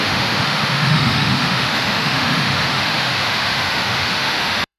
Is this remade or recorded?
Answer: remade